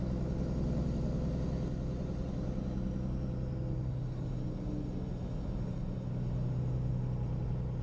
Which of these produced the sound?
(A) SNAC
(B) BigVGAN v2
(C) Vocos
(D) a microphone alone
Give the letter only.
D